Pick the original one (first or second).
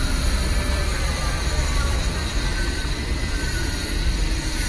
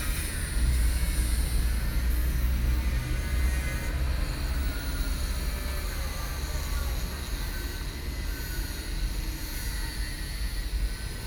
second